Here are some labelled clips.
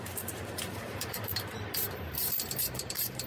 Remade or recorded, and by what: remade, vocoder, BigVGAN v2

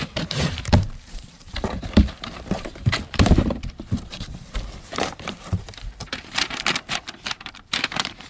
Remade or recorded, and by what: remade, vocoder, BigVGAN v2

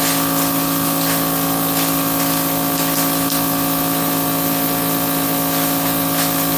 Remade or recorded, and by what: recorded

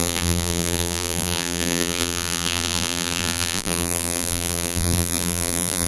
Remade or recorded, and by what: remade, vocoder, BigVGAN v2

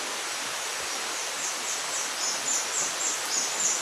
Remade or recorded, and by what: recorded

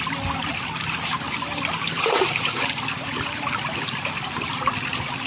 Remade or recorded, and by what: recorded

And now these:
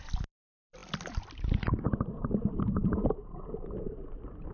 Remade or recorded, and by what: remade, vocoder, BigVGAN v2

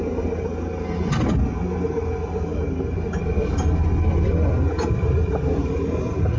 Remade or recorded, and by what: recorded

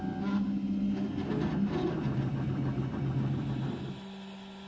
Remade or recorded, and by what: recorded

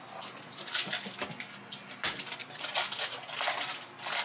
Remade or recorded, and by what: recorded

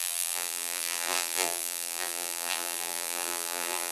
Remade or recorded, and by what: remade, vocoder, BigVGAN v2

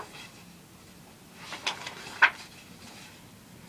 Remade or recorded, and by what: recorded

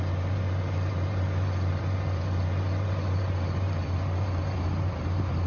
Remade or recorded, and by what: remade, vocoder, BigVGAN v2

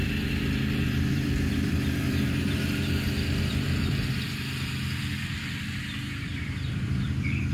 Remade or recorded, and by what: remade, vocoder, BigVGAN v2